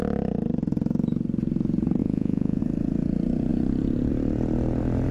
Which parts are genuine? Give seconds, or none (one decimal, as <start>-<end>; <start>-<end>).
0.0-2.0; 2.6-5.1